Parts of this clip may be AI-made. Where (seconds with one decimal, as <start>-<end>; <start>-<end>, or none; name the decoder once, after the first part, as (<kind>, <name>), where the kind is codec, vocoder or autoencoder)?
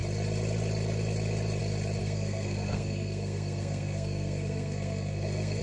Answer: 2.0-5.6 (codec, SNAC)